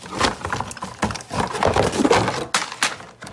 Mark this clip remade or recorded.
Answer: recorded